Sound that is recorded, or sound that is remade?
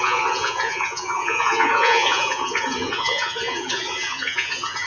remade